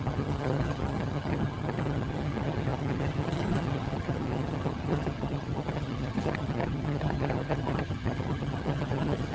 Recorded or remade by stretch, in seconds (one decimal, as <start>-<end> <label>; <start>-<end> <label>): 0.0-9.3 remade